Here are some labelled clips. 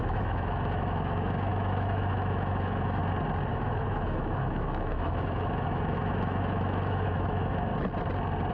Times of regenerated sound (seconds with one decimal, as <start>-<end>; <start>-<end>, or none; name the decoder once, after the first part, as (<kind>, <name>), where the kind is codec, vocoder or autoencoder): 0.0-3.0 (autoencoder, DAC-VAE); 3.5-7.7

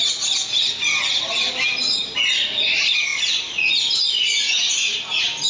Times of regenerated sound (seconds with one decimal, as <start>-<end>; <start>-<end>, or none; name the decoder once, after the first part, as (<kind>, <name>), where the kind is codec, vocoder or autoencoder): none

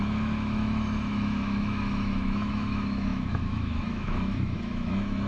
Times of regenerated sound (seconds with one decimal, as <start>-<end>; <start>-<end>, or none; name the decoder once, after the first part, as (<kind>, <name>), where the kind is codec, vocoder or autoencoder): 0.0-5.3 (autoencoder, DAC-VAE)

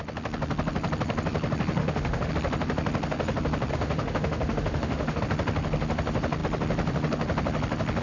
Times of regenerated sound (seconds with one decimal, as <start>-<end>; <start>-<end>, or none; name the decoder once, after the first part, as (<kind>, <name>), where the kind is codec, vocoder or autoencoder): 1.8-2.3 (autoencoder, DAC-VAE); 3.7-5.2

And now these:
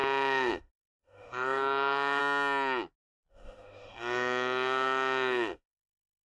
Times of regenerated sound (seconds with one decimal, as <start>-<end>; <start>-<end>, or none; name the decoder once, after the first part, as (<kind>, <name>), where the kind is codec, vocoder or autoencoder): 0.0-2.2 (autoencoder, DAC-VAE); 3.3-6.3

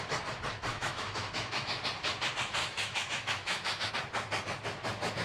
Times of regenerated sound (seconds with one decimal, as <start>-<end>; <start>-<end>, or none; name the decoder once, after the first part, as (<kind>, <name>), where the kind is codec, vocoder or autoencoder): 0.7-1.8 (autoencoder, DAC-VAE); 2.6-3.9

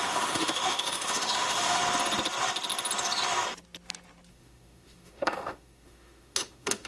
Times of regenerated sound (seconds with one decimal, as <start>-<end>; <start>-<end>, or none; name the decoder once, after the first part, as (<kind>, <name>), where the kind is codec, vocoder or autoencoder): 0.0-1.8 (autoencoder, DAC-VAE); 4.3-6.9

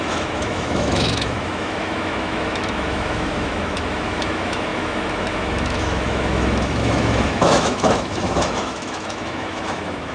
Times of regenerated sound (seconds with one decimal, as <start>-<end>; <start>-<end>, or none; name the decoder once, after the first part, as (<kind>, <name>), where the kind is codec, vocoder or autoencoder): 0.0-10.1 (autoencoder, DAC-VAE)